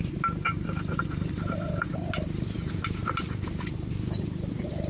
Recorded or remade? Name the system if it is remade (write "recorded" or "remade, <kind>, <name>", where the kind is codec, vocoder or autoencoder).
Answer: recorded